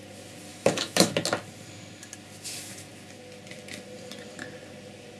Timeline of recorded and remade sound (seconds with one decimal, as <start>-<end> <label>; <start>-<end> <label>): 0.0-0.5 recorded; 0.5-1.1 remade; 1.1-5.2 recorded